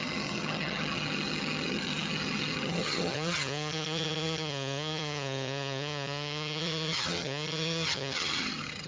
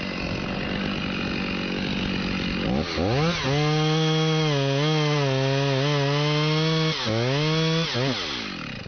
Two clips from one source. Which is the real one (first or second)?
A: second